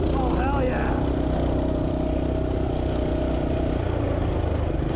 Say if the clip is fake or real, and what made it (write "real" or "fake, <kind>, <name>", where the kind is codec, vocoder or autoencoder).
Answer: real